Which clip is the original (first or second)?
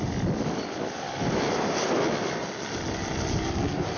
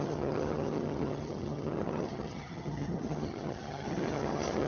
first